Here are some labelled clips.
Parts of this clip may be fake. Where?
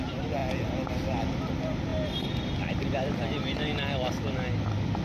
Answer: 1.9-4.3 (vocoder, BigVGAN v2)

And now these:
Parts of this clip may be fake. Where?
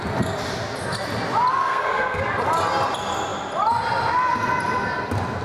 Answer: 1.6-2.2 (codec, SNAC)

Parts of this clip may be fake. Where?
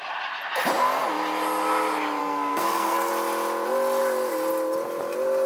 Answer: 2.2-3.1 (codec, SNAC)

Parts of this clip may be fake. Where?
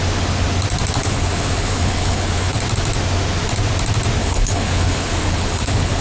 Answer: 1.0-2.6 (codec, HILCodec); 4.2-6.0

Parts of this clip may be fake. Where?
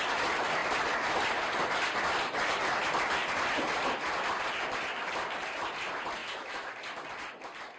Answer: 6.2-6.7 (autoencoder, DAC-VAE)